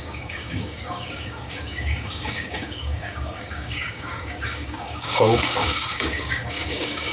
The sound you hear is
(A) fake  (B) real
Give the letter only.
A